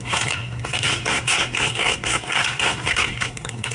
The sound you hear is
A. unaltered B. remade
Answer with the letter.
B